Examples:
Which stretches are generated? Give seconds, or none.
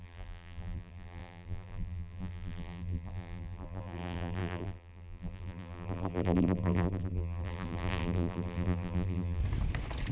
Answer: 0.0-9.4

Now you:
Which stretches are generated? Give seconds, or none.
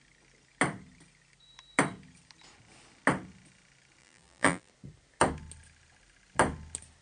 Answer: 4.0-4.7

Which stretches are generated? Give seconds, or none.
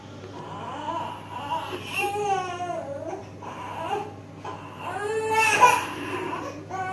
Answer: 3.2-3.9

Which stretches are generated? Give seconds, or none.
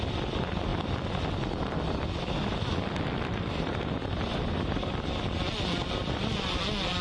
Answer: 3.3-4.9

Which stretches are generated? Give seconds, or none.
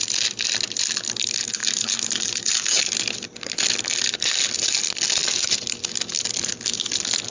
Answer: 1.6-2.8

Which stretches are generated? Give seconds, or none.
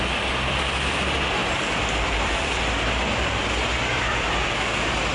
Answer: 1.4-4.5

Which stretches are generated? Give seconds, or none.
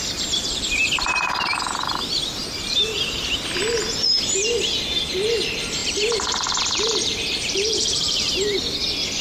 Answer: 2.4-3.3; 5.8-8.3